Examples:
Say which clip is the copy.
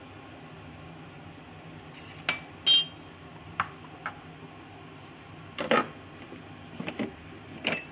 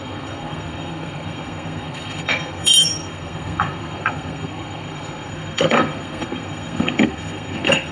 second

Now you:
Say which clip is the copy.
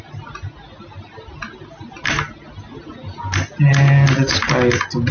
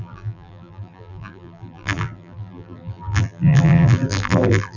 second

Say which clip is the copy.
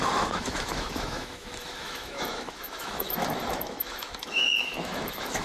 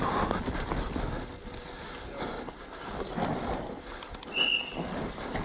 first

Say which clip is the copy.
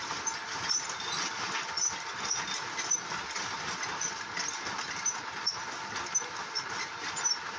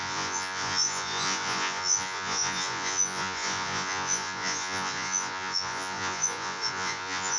second